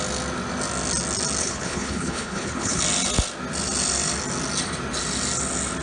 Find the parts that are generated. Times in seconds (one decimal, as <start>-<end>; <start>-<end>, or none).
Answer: 1.4-2.8